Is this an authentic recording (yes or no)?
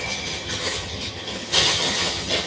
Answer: no